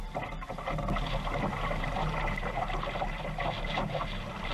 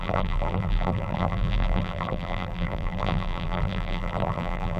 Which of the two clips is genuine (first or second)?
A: first